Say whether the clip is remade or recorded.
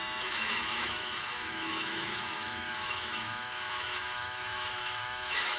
remade